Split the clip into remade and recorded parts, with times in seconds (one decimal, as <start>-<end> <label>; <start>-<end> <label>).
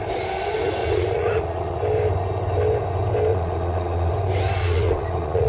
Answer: 0.0-0.8 recorded; 0.8-1.8 remade; 1.8-3.3 recorded; 3.3-4.1 remade; 4.1-4.6 recorded; 4.6-5.5 remade